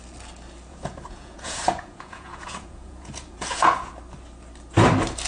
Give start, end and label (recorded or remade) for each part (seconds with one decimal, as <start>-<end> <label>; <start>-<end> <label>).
0.0-0.7 recorded; 0.7-3.9 remade; 3.9-5.3 recorded